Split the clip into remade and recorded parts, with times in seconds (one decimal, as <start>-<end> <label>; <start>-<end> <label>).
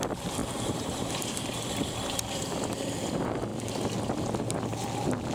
0.0-0.4 recorded; 0.4-1.1 remade; 1.1-5.3 recorded